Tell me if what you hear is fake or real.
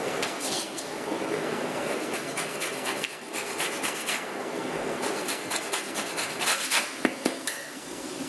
fake